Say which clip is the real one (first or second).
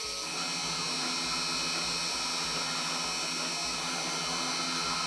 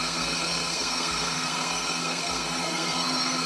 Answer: first